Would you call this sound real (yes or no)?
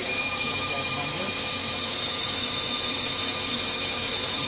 no